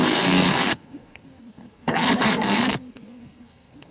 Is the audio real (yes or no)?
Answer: no